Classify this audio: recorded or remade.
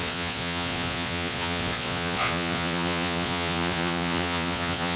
remade